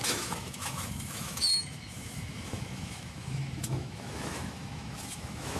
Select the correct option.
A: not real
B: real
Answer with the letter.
A